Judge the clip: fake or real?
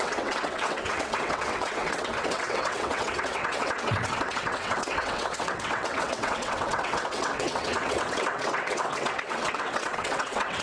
fake